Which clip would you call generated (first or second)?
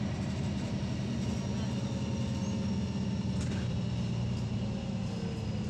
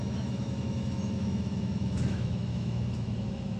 second